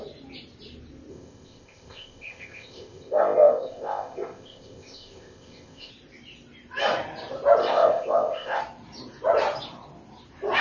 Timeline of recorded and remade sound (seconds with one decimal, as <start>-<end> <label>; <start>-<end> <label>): 0.0-1.1 recorded; 1.1-5.9 remade; 5.9-7.6 recorded; 7.6-8.6 remade; 8.6-10.6 recorded